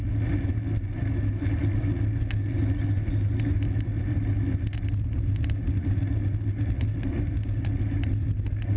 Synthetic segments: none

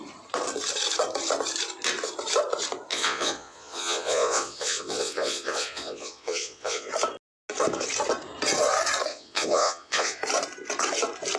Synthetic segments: 2.9-6.9; 9.1-10.2